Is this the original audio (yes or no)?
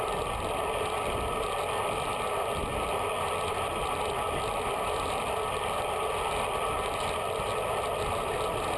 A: yes